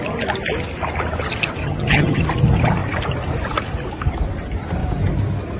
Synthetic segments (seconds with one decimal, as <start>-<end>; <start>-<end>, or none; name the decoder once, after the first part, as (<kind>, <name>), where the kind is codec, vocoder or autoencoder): 1.6-2.2 (vocoder, HiFi-GAN)